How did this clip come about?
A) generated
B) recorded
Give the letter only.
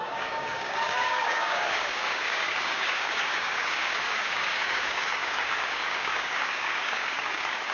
A